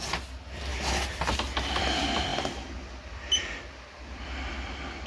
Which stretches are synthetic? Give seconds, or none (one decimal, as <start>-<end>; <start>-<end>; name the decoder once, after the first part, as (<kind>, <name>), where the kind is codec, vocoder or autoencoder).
none